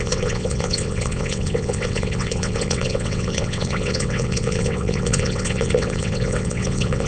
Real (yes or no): no